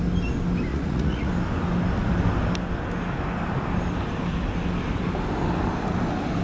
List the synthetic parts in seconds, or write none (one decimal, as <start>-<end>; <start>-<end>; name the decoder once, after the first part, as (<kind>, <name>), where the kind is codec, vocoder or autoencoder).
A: 0.7-1.3 (vocoder, Vocos)